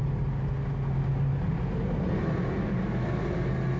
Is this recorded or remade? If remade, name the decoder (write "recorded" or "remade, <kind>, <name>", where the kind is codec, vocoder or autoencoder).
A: recorded